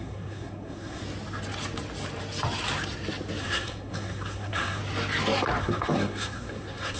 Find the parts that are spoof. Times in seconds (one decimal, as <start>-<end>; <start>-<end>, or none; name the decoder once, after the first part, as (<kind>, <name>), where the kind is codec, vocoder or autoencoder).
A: 0.0-1.0 (codec, SNAC); 3.4-4.8; 5.6-7.0